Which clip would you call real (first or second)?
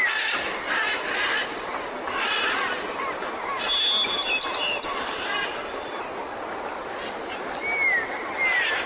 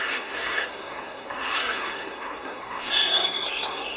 first